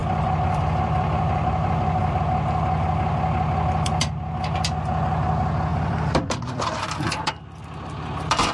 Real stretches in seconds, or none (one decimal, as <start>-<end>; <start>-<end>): 2.2-5.7; 7.3-8.5